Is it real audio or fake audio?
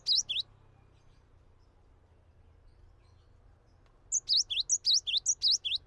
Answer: real